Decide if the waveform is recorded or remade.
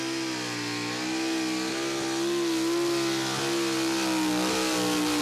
recorded